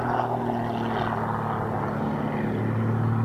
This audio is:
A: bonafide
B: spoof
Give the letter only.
A